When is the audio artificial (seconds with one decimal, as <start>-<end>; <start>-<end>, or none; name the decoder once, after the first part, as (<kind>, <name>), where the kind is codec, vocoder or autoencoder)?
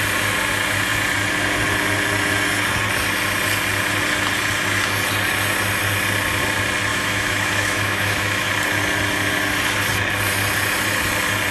6.9-8.5 (autoencoder, DAC-VAE)